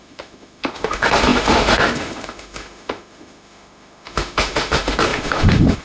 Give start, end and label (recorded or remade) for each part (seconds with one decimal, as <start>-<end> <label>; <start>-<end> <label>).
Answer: 0.0-5.8 remade